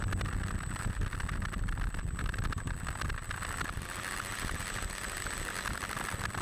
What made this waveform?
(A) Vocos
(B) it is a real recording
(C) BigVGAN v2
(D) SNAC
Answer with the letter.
B